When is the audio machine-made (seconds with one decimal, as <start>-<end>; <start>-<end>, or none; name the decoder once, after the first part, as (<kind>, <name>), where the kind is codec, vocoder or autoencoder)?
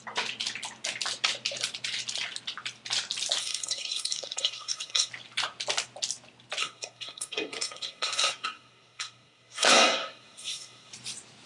3.4-5.1 (codec, SNAC); 6.6-10.9